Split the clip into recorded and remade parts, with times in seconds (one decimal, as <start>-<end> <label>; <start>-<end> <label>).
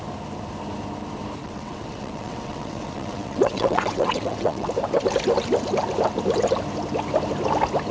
0.0-1.4 recorded; 1.4-4.7 remade; 4.7-7.9 recorded